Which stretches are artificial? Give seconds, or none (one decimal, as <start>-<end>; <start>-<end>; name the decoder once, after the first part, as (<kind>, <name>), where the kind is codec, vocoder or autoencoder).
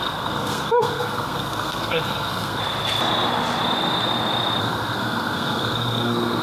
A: 0.0-2.6 (codec, SNAC); 4.6-6.4